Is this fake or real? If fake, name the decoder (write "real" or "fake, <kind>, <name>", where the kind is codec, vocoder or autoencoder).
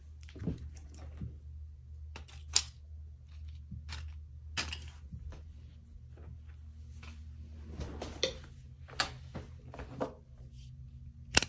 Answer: real